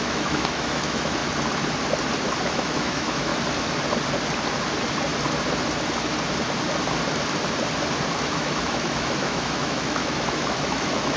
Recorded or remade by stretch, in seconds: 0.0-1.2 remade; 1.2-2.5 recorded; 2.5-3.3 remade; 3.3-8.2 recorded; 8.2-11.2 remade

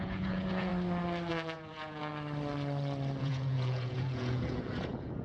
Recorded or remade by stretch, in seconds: 0.0-0.7 remade; 0.7-1.3 recorded; 1.3-2.1 remade; 2.1-3.2 recorded; 3.2-5.2 remade

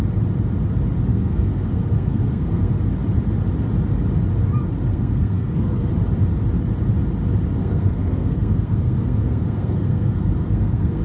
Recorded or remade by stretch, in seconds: 0.0-1.1 recorded; 1.1-2.7 remade; 2.7-4.9 recorded; 4.9-5.9 remade; 5.9-7.6 recorded; 7.6-11.0 remade

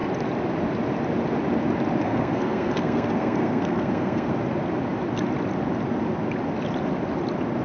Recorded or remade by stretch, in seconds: 0.0-2.0 recorded; 2.0-4.3 remade; 4.3-7.6 recorded

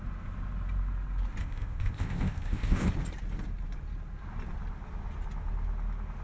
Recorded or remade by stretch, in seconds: 0.0-1.4 recorded; 1.4-2.9 remade; 2.9-6.2 recorded

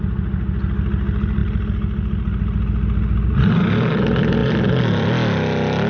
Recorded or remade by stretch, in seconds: 0.0-5.9 recorded

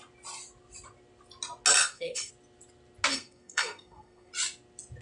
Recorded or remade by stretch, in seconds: 0.0-1.8 recorded; 1.8-2.3 remade; 2.3-3.1 recorded; 3.1-4.3 remade; 4.3-5.0 recorded

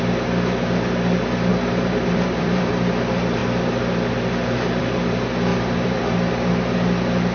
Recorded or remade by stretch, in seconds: 0.0-1.5 recorded; 1.5-2.7 remade; 2.7-5.5 recorded; 5.5-6.5 remade; 6.5-7.3 recorded